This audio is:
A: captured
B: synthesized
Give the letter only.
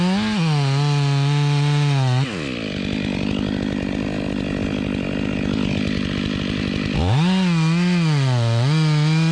A